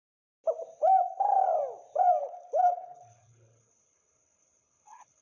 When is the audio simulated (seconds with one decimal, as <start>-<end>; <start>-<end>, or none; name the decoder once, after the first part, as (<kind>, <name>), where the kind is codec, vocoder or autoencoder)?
2.2-5.2 (codec, HILCodec)